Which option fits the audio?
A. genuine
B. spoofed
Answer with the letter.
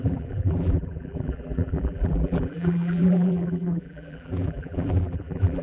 B